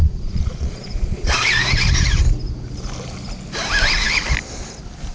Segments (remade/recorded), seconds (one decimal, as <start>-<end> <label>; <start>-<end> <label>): 0.0-1.6 remade; 1.6-5.1 recorded